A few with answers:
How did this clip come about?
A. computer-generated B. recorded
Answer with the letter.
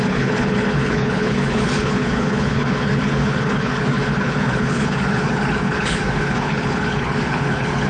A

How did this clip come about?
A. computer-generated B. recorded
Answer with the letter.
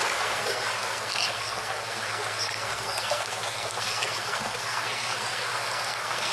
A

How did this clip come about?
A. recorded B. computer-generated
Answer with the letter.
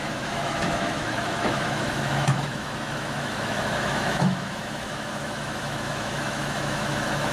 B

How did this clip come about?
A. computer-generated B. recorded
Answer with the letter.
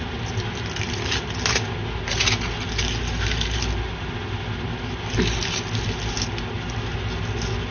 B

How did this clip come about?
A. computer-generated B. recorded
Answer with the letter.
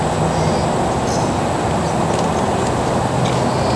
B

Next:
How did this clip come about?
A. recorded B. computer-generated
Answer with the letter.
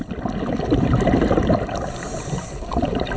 A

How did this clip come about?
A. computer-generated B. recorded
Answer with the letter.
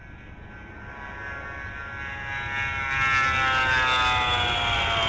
B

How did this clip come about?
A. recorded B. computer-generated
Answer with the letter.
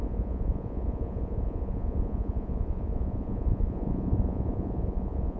B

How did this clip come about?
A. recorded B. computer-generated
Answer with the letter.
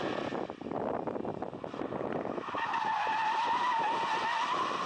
A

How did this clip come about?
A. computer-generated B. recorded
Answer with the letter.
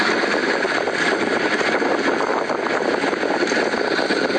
B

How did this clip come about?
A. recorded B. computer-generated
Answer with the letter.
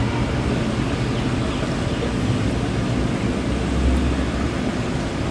A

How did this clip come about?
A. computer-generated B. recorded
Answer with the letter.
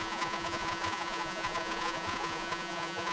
A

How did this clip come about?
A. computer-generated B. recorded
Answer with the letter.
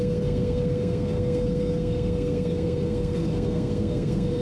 A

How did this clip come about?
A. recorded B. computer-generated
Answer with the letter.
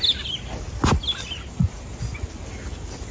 A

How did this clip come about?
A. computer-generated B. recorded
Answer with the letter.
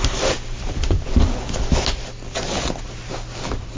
B